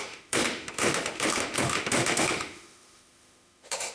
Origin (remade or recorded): remade